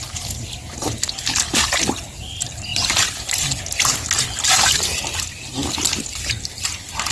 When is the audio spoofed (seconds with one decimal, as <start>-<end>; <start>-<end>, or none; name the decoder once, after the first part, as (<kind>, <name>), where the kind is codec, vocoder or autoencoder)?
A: none